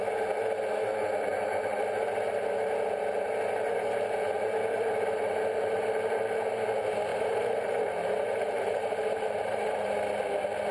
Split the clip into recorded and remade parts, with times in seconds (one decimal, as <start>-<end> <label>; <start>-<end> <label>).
0.0-7.1 recorded; 7.1-9.9 remade; 9.9-10.7 recorded